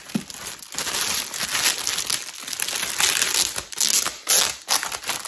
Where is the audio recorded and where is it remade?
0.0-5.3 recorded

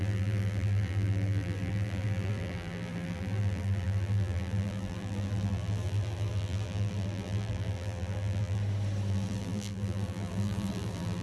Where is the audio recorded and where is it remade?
0.0-8.6 remade; 8.6-9.1 recorded; 9.1-11.2 remade

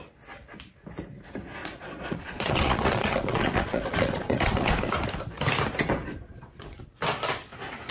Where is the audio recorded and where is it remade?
0.0-1.6 recorded; 1.6-4.9 remade; 4.9-6.1 recorded; 6.1-6.8 remade; 6.8-7.9 recorded

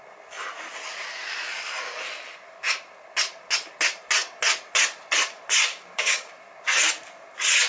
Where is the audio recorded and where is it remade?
0.0-5.7 recorded; 5.7-6.3 remade; 6.3-7.7 recorded